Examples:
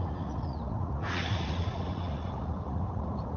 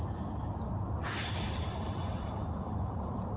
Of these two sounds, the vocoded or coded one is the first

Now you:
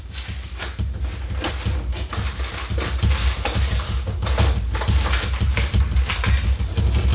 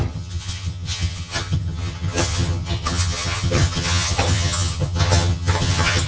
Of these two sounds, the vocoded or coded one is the second